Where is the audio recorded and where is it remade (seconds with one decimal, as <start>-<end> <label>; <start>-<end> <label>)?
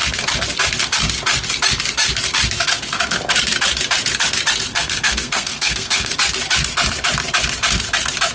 0.0-4.7 recorded; 4.7-6.1 remade; 6.1-8.3 recorded